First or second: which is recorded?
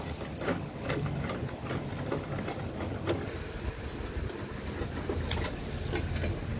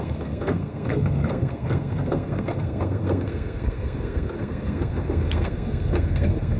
first